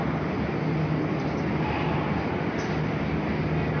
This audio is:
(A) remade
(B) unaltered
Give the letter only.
B